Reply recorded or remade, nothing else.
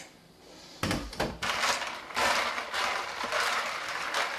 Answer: remade